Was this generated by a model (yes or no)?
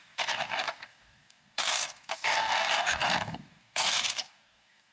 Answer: yes